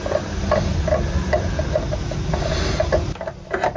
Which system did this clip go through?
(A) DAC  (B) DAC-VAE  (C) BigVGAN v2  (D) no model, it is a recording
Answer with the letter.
D